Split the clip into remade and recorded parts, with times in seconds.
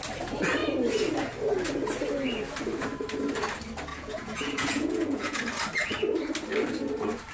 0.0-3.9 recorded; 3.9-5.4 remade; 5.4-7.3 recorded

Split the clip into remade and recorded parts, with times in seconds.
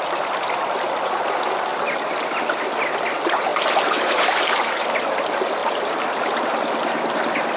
0.0-5.6 recorded; 5.6-6.4 remade; 6.4-7.6 recorded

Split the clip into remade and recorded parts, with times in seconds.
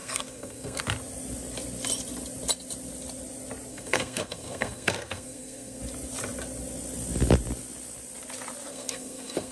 0.0-0.8 remade; 0.8-3.7 recorded; 3.7-5.8 remade; 5.8-8.7 recorded; 8.7-9.5 remade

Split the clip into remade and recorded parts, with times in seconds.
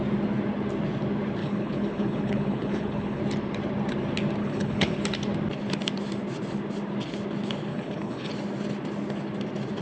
0.0-1.4 recorded; 1.4-3.2 remade; 3.2-4.4 recorded; 4.4-5.0 remade; 5.0-7.7 recorded; 7.7-8.3 remade; 8.3-9.8 recorded